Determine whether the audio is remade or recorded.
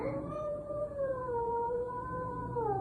remade